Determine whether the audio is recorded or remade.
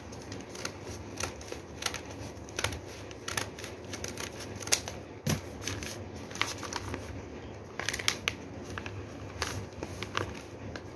recorded